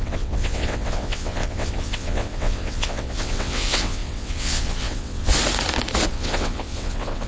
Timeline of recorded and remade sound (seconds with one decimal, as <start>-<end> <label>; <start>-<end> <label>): 0.0-5.3 remade; 5.3-6.1 recorded; 6.1-7.3 remade